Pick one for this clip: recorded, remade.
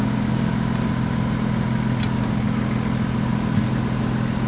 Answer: recorded